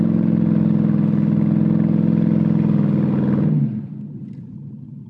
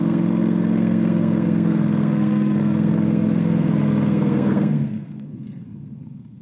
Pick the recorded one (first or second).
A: first